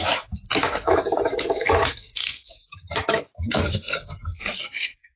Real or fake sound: fake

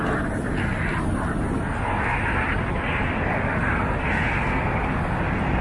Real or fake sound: real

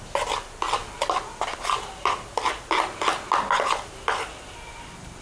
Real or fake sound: real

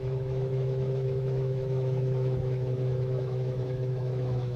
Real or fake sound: fake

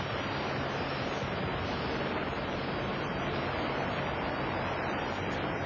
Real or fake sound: real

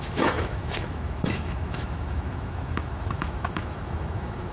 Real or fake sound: fake